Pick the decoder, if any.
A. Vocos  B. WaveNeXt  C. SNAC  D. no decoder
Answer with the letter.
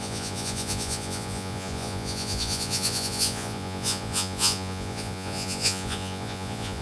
A